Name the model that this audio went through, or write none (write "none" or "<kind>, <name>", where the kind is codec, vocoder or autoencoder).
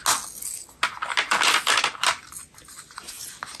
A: none